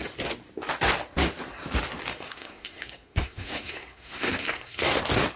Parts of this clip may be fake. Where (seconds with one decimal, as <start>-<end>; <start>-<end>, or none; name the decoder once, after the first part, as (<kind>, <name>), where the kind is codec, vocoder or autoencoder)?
2.1-5.0 (codec, SNAC)